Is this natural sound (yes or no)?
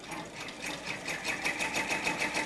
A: yes